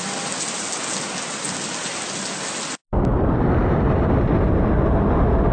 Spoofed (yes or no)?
no